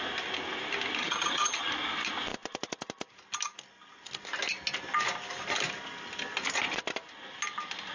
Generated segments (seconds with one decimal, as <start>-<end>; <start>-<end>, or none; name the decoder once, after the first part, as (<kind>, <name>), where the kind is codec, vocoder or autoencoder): 1.0-1.7 (vocoder, HiFi-GAN)